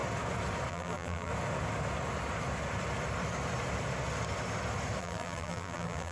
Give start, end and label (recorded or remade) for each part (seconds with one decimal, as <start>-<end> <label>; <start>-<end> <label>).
0.0-0.7 recorded; 0.7-1.3 remade; 1.3-5.0 recorded; 5.0-6.1 remade